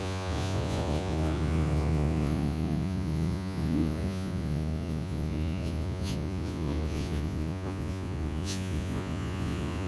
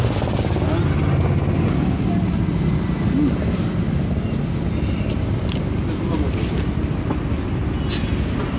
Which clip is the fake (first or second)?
first